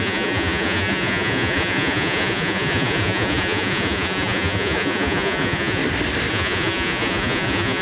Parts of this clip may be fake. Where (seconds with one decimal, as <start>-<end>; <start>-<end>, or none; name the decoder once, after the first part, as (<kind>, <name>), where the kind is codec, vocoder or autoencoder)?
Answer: 0.0-5.8 (vocoder, Vocos); 6.3-7.8